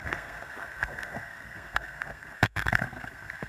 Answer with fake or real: fake